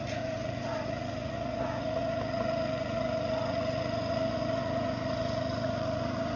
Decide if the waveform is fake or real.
fake